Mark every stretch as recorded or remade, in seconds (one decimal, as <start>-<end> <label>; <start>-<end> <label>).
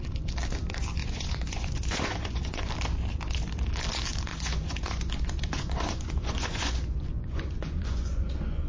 0.0-1.0 recorded; 1.0-2.7 remade; 2.7-4.3 recorded; 4.3-8.7 remade